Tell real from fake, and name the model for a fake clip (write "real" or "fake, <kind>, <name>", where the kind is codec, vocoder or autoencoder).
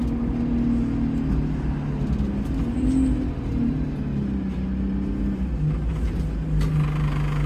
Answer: real